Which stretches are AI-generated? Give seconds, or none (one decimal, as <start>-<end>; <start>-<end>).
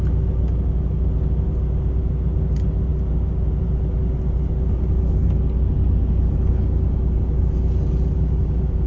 none